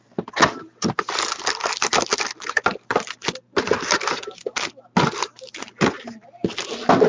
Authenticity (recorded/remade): recorded